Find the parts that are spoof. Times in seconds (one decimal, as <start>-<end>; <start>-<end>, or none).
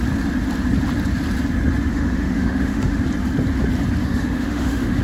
1.9-3.0; 4.0-5.0